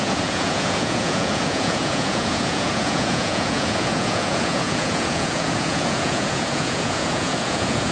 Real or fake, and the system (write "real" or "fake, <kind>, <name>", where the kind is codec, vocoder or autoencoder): fake, vocoder, Vocos